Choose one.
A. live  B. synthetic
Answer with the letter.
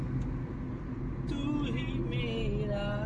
A